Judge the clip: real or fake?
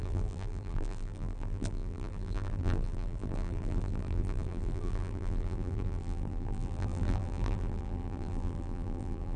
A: fake